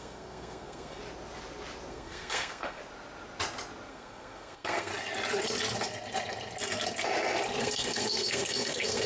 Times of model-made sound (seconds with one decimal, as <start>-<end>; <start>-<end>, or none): 0.0-1.0; 1.9-2.8; 3.9-4.9; 7.6-9.1